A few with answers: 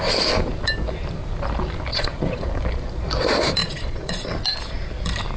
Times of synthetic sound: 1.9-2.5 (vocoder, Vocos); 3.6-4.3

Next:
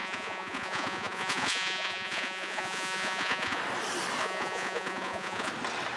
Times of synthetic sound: 0.0-3.6 (vocoder, Vocos); 4.2-5.5

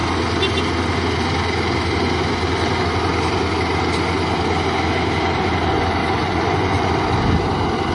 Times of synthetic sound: 6.0-6.9 (vocoder, Vocos)

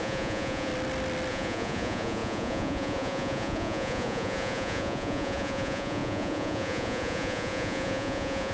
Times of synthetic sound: 0.0-0.7 (vocoder, Vocos); 1.3-8.5

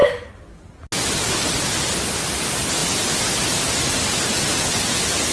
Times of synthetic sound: none